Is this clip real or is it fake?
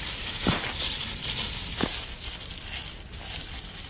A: real